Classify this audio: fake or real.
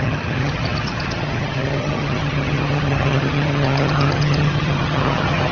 fake